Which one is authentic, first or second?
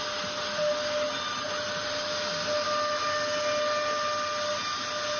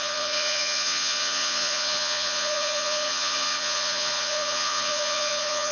first